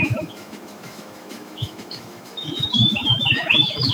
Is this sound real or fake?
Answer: fake